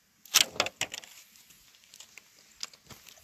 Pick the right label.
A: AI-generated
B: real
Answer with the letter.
B